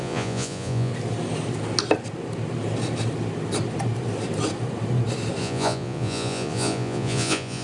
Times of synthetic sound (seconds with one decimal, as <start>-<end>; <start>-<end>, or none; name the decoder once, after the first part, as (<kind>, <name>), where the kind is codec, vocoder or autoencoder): 0.0-0.9 (vocoder, Vocos); 5.4-7.6